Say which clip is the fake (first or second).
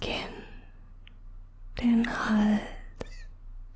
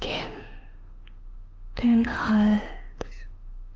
second